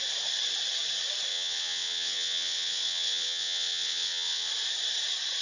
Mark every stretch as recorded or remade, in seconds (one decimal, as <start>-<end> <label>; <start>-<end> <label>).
0.0-1.3 recorded; 1.3-4.5 remade; 4.5-5.4 recorded